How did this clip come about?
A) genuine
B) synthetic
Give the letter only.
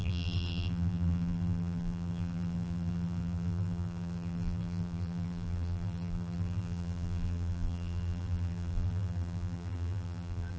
B